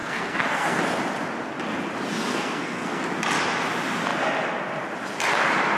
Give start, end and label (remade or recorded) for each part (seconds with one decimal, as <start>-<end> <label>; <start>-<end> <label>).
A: 0.0-0.8 remade; 0.8-2.3 recorded; 2.3-3.0 remade; 3.0-5.8 recorded